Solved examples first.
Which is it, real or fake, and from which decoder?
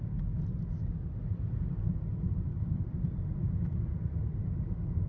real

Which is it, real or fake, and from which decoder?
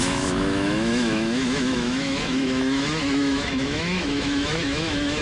fake, autoencoder, DAC-VAE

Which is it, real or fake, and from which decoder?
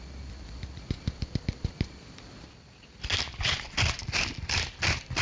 real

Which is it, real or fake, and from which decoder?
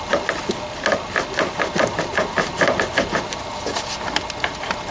real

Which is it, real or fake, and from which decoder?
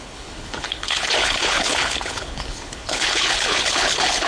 fake, codec, HILCodec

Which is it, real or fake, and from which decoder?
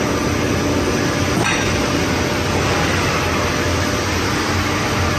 real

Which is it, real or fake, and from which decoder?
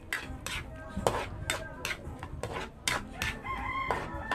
real